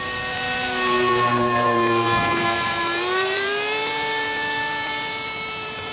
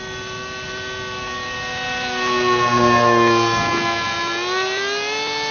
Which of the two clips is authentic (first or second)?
second